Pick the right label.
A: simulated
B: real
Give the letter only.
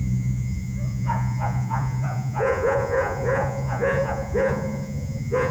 A